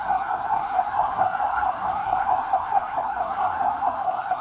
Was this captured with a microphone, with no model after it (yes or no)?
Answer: no